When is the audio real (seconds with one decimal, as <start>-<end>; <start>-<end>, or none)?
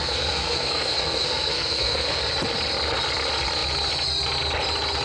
2.2-5.0